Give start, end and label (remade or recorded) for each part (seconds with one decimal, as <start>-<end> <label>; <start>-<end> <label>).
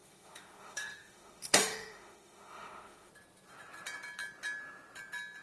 0.0-3.1 remade; 3.1-5.4 recorded